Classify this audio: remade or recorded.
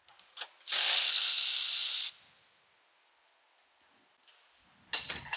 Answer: recorded